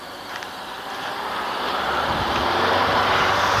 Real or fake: fake